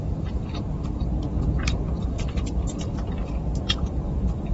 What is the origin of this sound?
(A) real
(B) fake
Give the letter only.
B